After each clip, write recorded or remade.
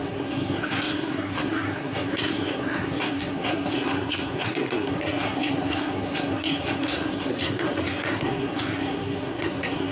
remade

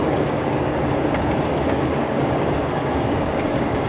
remade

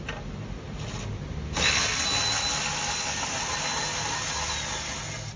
recorded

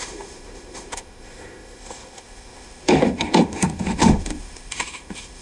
remade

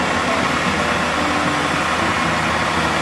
recorded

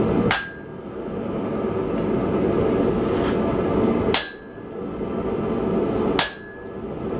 recorded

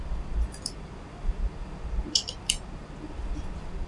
recorded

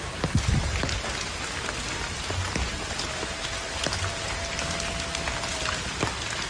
recorded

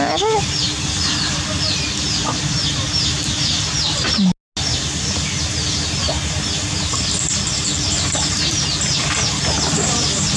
recorded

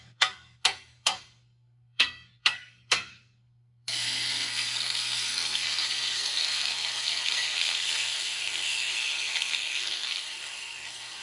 remade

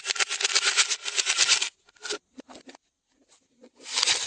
recorded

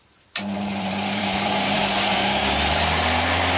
remade